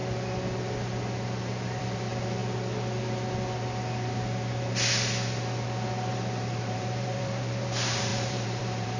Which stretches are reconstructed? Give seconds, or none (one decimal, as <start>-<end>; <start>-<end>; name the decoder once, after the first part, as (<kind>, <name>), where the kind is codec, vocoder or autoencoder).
1.8-2.4 (vocoder, BigVGAN v2); 6.1-9.0